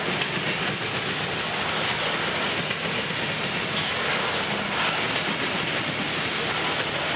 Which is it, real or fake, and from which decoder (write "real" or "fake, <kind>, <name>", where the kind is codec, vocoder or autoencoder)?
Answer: real